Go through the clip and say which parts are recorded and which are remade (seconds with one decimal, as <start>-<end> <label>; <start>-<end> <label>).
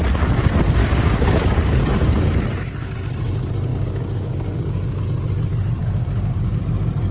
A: 0.0-0.8 recorded; 0.8-2.4 remade; 2.4-3.7 recorded; 3.7-5.0 remade; 5.0-5.8 recorded; 5.8-6.6 remade; 6.6-7.1 recorded